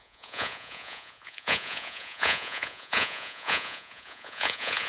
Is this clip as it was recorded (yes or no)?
no